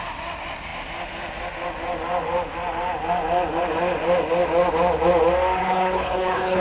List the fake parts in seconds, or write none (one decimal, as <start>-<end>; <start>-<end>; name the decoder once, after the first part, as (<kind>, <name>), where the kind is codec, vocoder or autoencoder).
5.6-6.6 (codec, HILCodec)